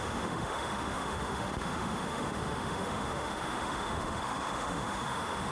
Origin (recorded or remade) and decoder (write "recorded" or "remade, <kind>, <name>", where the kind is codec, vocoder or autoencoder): remade, autoencoder, DAC-VAE